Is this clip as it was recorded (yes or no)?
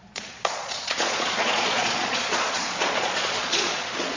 no